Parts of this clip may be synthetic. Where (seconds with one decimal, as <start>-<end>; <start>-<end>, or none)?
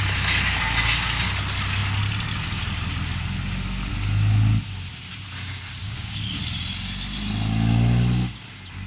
5.8-6.4